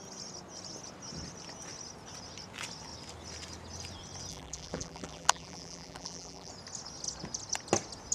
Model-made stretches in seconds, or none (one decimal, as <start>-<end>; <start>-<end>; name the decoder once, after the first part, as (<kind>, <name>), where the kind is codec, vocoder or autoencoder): 4.3-6.5 (vocoder, BigVGAN v2)